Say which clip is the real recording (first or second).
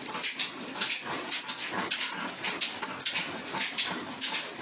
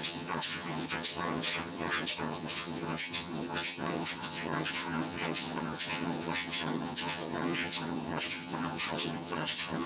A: first